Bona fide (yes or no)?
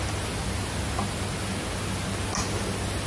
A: yes